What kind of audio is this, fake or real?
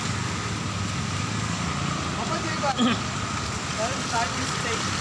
real